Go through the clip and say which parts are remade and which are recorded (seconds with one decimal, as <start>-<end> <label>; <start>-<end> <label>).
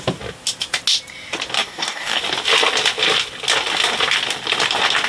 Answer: 0.0-1.6 recorded; 1.6-2.2 remade; 2.2-5.1 recorded